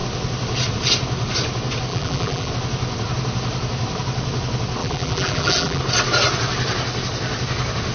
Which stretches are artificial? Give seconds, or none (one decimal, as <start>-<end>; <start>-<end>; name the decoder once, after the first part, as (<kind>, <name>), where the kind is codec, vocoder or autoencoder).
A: 1.9-2.5 (vocoder, BigVGAN v2); 4.8-5.8